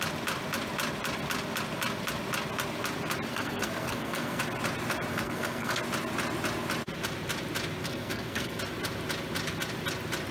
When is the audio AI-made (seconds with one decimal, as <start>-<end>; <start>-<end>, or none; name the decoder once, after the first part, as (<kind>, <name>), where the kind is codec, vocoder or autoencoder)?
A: 3.3-4.4 (codec, SNAC); 5.1-5.8; 7.8-8.6